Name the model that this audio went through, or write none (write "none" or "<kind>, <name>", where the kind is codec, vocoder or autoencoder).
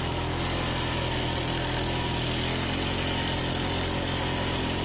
none